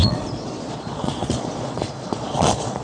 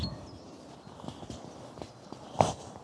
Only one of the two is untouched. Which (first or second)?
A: second